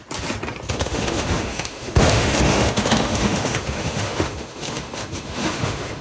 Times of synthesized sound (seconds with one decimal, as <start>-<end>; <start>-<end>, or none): 0.7-6.0